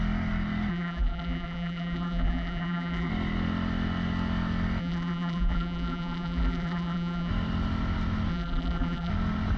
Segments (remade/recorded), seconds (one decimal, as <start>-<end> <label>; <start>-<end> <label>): 0.0-0.7 recorded; 0.7-3.1 remade; 3.1-4.8 recorded; 4.8-7.3 remade; 7.3-8.3 recorded; 8.3-9.1 remade; 9.1-9.6 recorded